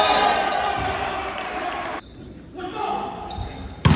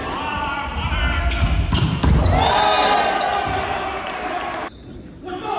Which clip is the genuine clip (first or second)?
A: second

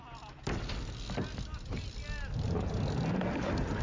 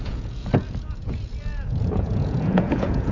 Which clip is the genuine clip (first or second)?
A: first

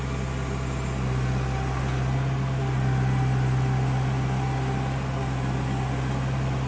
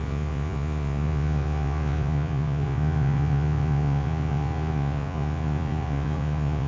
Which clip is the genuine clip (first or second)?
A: first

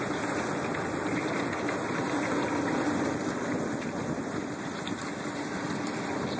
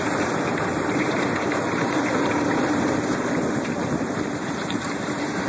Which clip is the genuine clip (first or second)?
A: first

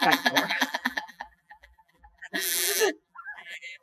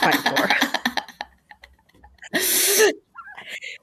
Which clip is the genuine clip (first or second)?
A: second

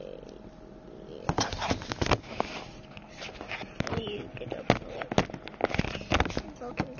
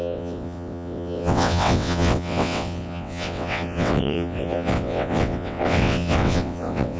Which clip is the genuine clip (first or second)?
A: first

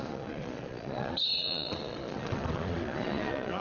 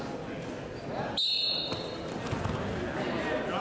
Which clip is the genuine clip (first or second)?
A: second